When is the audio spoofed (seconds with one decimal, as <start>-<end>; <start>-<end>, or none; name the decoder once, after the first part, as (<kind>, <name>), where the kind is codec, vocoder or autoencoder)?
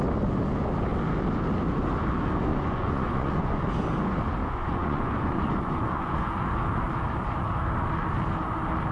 2.5-3.6 (vocoder, Vocos); 4.4-6.3